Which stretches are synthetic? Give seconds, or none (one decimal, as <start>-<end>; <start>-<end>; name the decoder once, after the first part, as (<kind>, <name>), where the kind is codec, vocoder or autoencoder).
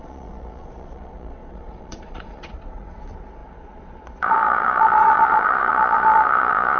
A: 0.0-6.8 (vocoder, Vocos)